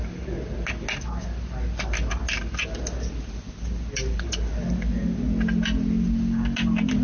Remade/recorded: recorded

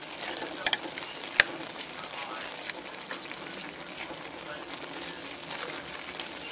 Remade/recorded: recorded